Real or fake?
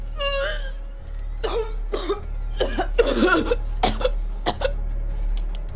real